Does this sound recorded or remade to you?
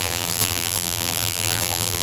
remade